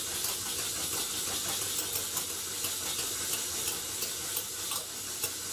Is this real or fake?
real